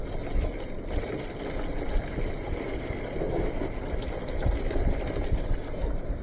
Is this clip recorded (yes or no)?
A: yes